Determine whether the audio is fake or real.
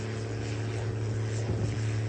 real